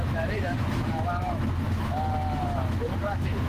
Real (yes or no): no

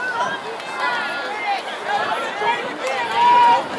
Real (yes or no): yes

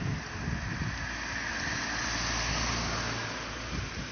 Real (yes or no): yes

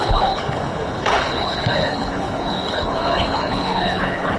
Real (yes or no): no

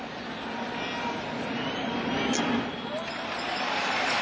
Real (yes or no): yes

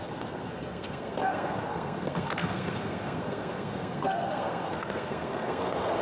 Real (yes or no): no